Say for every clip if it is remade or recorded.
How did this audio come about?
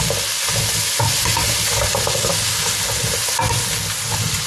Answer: recorded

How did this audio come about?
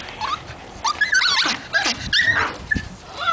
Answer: recorded